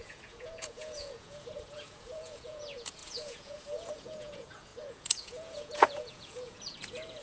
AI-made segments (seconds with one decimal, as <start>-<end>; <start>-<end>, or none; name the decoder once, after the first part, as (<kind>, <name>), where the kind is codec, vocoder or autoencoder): 0.0-7.2 (vocoder, Vocos)